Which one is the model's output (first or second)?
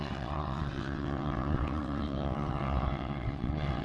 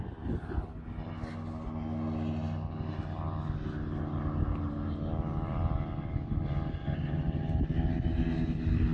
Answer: first